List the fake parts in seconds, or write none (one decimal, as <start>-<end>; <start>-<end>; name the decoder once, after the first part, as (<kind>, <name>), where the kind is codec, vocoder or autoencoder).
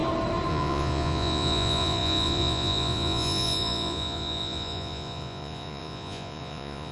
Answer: 0.5-6.9 (vocoder, Vocos)